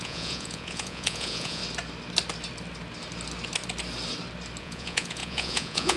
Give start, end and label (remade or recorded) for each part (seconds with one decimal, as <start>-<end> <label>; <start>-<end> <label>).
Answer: 0.0-1.6 remade; 1.6-4.6 recorded; 4.6-6.0 remade